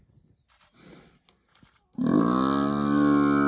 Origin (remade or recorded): recorded